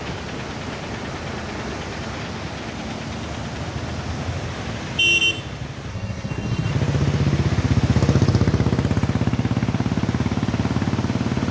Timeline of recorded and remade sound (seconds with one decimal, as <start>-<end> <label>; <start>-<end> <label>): 0.0-5.9 recorded; 5.9-6.7 remade; 6.7-11.5 recorded